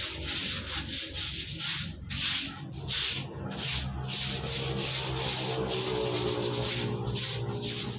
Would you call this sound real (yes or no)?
yes